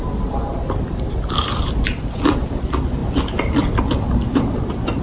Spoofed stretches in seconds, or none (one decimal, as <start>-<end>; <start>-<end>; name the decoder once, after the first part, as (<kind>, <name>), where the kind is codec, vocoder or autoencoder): none